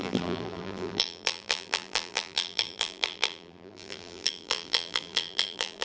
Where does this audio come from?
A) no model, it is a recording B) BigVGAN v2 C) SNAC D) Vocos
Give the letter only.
B